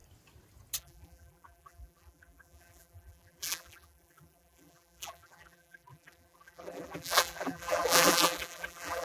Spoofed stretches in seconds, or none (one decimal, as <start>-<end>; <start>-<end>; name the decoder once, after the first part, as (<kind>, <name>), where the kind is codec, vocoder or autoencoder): 0.8-9.0 (vocoder, BigVGAN v2)